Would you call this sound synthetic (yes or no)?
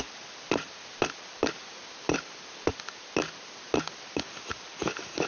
no